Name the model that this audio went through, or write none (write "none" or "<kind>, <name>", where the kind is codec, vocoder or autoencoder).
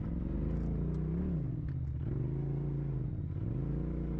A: none